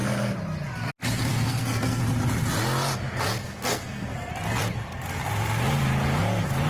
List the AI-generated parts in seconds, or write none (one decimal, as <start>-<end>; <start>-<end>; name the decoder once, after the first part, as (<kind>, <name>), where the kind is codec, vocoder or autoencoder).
1.3-2.0 (codec, SNAC); 3.4-4.3